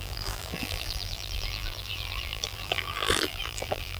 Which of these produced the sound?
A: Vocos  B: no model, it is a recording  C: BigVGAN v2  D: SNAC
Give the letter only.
C